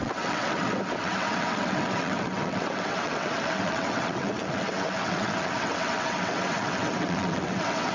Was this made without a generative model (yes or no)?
no